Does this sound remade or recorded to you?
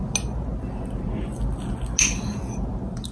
recorded